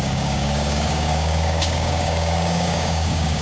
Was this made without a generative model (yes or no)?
no